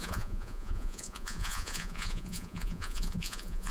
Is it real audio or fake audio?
fake